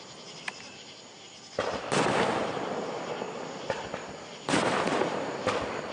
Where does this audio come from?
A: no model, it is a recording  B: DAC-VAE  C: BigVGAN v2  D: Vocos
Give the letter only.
A